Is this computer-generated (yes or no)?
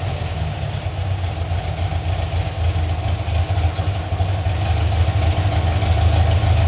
no